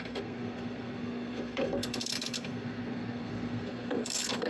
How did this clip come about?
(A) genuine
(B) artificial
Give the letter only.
B